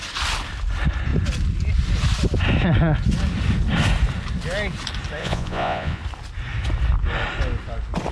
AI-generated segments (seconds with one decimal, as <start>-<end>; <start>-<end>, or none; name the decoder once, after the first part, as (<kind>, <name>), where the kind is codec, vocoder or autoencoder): 5.2-6.0 (vocoder, Vocos)